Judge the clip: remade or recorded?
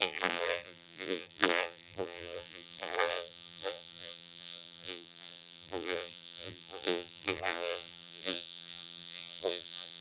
remade